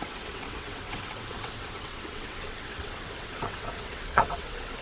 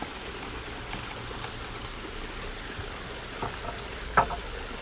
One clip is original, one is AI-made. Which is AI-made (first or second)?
first